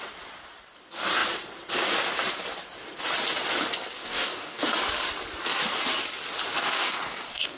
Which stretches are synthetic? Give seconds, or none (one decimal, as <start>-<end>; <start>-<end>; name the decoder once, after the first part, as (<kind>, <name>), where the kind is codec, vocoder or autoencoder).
4.0-4.7 (codec, DAC); 6.6-7.6